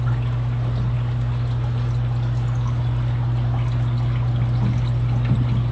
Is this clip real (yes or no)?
yes